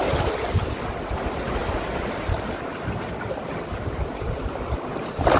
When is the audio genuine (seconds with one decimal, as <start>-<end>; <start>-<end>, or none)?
0.0-5.4